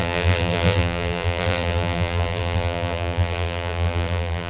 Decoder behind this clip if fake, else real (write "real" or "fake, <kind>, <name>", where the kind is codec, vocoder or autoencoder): fake, vocoder, BigVGAN v2